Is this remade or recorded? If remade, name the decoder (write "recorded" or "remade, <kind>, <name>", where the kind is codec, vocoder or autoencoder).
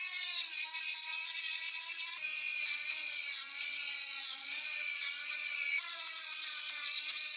remade, vocoder, Vocos